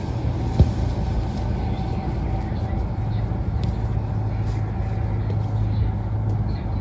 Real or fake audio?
real